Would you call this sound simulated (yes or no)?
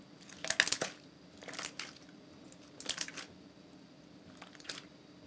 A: no